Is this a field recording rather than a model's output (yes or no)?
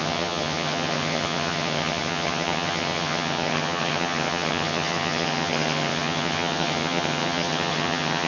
no